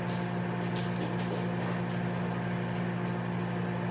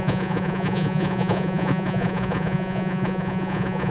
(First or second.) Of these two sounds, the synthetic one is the second